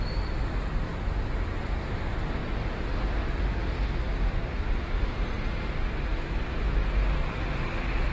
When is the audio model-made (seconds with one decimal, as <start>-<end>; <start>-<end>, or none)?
2.4-5.2; 6.1-6.7